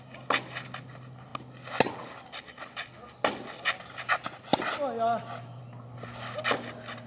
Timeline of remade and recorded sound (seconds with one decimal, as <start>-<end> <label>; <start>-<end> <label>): 0.0-7.1 recorded